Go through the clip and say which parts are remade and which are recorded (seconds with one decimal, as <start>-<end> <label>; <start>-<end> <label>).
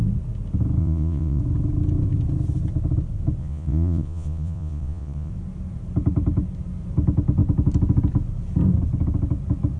0.0-0.8 recorded; 0.8-1.4 remade; 1.4-3.4 recorded; 3.4-5.3 remade; 5.3-9.8 recorded